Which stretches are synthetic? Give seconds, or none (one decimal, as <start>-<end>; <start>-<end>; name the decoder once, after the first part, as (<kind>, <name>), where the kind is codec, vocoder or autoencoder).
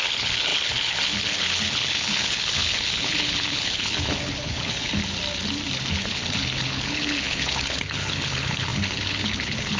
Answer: 0.0-5.0 (codec, HILCodec); 5.9-9.8